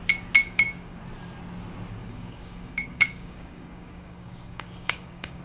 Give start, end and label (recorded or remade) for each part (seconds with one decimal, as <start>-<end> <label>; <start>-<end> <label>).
0.0-0.4 recorded; 0.4-1.0 remade; 1.0-2.0 recorded; 2.0-5.4 remade